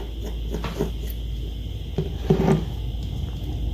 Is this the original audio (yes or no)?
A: yes